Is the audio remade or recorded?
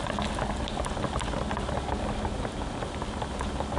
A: recorded